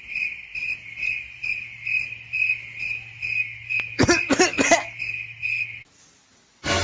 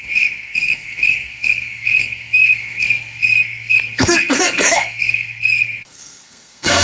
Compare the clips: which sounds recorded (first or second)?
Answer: first